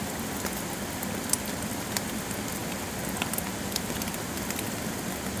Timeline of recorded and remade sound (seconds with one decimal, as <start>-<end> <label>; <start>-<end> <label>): 0.0-5.4 recorded